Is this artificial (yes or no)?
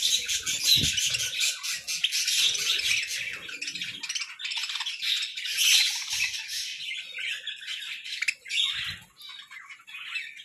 no